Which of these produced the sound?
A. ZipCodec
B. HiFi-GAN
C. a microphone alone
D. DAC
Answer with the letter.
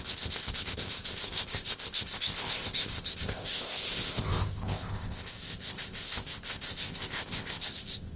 A